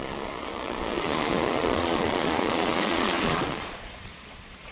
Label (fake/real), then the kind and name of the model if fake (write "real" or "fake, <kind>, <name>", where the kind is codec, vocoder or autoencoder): fake, vocoder, Vocos